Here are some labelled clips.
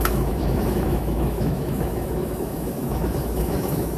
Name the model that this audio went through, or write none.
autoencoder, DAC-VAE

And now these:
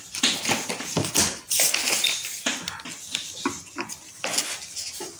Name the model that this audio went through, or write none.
none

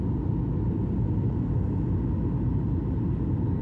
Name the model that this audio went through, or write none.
none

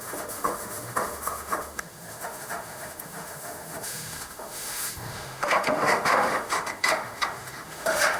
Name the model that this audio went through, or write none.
autoencoder, DAC-VAE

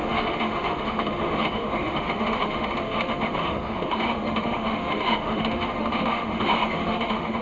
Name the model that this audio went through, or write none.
autoencoder, DAC-VAE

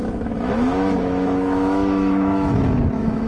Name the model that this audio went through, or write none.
autoencoder, DAC-VAE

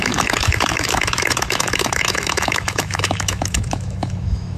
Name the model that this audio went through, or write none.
autoencoder, DAC-VAE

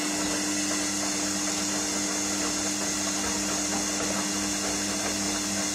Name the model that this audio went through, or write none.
none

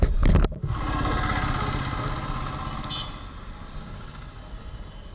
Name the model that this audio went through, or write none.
none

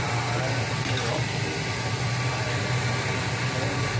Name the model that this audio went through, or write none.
none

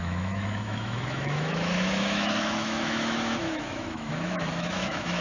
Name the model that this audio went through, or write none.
autoencoder, DAC-VAE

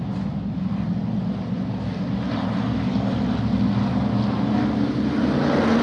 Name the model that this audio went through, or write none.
none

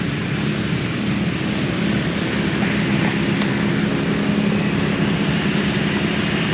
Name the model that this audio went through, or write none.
none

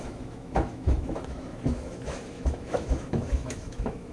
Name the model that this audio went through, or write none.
autoencoder, DAC-VAE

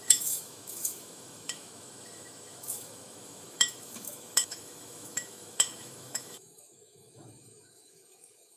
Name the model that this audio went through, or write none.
autoencoder, DAC-VAE